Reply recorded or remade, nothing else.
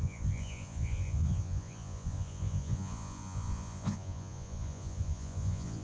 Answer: remade